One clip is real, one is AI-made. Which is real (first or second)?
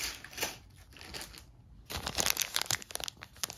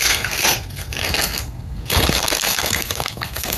first